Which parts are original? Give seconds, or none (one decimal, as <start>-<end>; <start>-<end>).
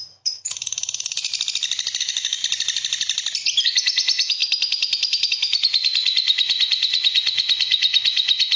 1.3-2.0; 2.4-3.6; 4.4-5.3